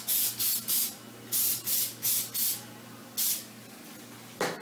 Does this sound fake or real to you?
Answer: real